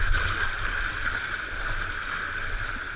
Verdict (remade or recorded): recorded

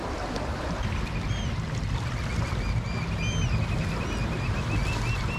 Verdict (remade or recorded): recorded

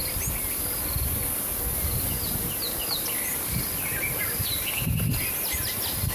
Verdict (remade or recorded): recorded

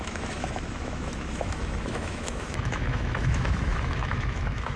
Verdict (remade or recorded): remade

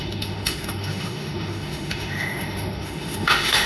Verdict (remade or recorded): remade